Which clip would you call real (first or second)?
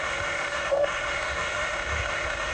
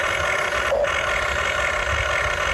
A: second